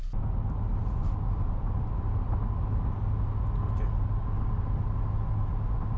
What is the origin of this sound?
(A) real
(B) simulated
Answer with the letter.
A